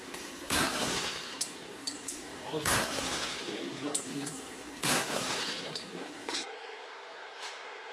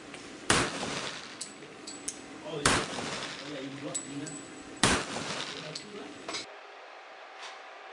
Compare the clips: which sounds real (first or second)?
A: second